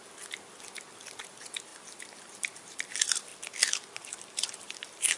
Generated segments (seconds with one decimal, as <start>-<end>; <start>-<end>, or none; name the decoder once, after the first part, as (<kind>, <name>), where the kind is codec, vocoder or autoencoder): 1.2-3.3 (vocoder, BigVGAN v2); 4.5-5.2

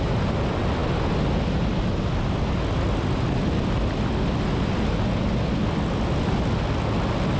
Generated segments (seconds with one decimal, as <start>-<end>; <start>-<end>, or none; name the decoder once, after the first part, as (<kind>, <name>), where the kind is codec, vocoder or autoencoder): none

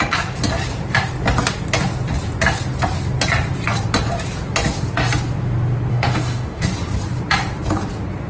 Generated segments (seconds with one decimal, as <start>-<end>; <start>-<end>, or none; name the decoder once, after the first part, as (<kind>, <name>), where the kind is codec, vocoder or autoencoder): 5.9-6.6 (autoencoder, DAC-VAE)